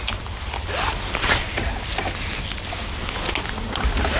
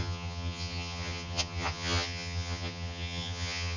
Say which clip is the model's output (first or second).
second